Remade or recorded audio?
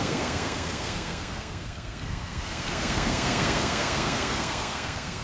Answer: remade